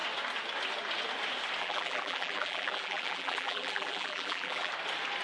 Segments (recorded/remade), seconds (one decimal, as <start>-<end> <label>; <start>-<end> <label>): 0.0-1.6 recorded; 1.6-4.7 remade; 4.7-5.2 recorded